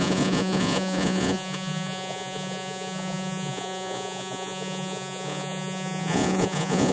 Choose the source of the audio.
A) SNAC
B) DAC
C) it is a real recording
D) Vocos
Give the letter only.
D